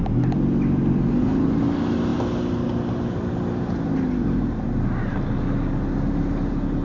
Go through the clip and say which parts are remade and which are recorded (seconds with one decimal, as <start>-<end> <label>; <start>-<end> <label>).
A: 0.0-6.8 recorded